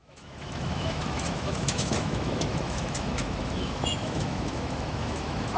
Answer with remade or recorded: remade